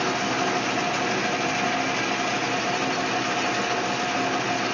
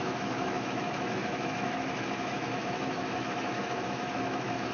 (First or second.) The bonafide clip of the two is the first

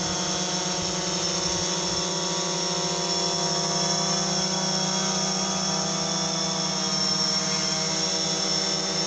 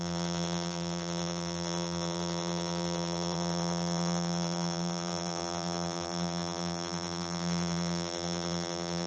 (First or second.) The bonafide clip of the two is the first